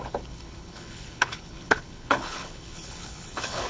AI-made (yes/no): yes